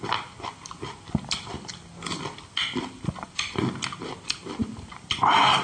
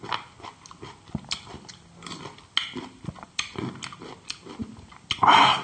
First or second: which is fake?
first